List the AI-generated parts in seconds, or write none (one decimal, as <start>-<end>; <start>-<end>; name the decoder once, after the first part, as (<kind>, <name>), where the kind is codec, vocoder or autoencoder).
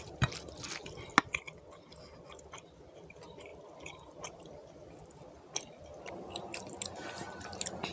none